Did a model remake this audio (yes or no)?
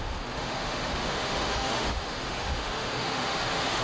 yes